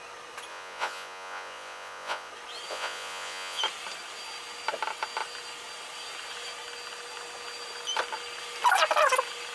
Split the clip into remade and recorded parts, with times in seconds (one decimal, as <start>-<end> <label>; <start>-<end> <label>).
0.0-0.5 recorded; 0.5-2.3 remade; 2.3-2.7 recorded; 2.7-3.6 remade; 3.6-9.5 recorded